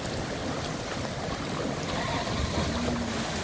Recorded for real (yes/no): yes